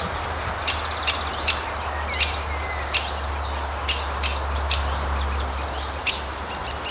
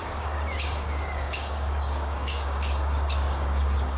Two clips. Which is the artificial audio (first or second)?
second